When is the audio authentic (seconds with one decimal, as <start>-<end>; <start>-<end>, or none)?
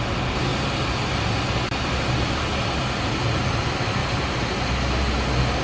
0.0-4.0; 4.7-5.6